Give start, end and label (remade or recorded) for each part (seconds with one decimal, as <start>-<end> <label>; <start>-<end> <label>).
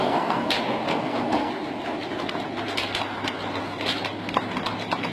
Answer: 0.0-0.5 remade; 0.5-0.9 recorded; 0.9-1.5 remade; 1.5-5.1 recorded